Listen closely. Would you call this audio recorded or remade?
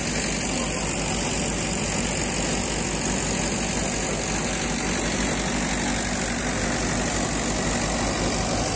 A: recorded